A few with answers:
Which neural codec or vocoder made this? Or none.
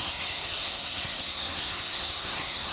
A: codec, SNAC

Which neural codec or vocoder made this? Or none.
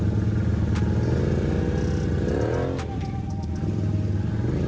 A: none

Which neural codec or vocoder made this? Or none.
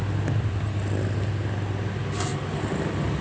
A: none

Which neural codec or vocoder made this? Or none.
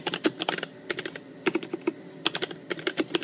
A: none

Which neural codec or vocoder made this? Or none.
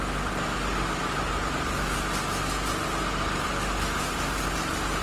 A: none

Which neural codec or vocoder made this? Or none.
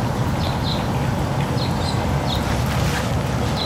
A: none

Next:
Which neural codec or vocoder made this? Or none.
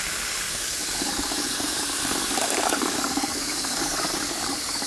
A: codec, DAC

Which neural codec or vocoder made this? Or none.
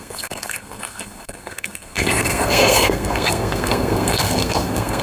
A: codec, SNAC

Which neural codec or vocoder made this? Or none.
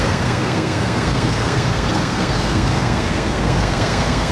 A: codec, SNAC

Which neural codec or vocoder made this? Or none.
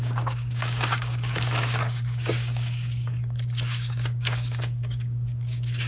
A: codec, DAC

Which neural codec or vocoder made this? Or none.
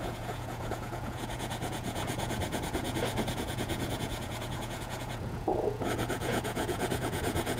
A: vocoder, Vocos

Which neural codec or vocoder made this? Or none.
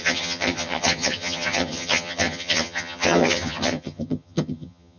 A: vocoder, HiFi-GAN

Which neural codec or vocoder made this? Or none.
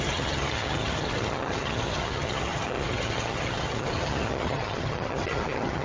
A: vocoder, HiFi-GAN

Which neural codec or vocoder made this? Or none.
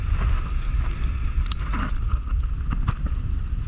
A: none